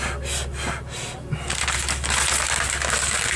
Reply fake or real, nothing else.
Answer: real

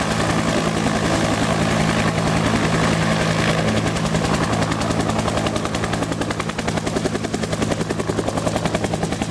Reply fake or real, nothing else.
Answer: real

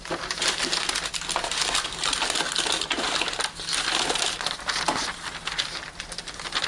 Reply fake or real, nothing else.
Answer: real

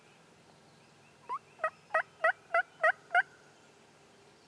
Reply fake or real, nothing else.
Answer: real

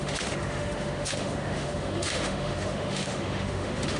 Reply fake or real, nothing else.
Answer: fake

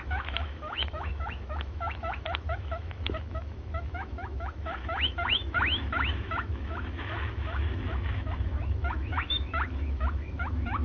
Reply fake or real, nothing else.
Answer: fake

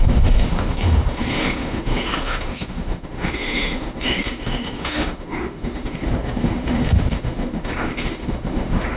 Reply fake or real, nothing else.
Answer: fake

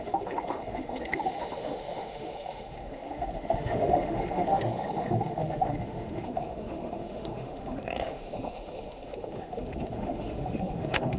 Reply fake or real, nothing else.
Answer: fake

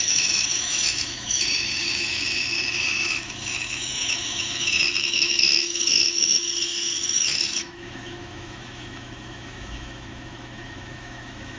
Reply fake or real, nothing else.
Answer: fake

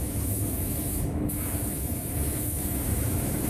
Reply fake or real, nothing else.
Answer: fake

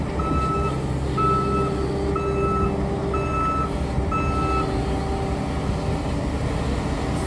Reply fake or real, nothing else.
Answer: real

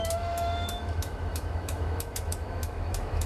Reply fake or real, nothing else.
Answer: fake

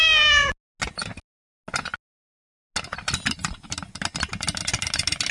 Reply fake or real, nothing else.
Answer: real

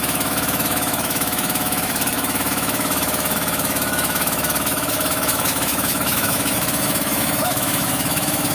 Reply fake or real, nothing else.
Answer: fake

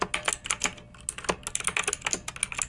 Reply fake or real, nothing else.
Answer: real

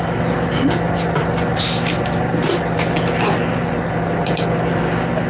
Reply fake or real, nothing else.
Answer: real